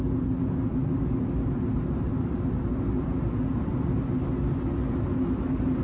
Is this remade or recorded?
recorded